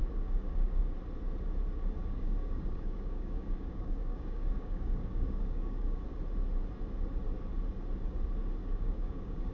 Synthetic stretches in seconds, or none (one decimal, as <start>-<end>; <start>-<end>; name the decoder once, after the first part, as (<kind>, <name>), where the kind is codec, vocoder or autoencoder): 0.0-0.8 (codec, DAC); 2.0-6.0; 8.6-9.5